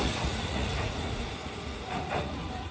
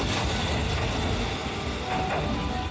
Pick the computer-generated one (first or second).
first